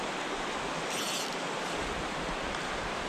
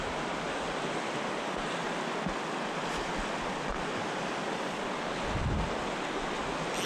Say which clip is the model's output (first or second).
first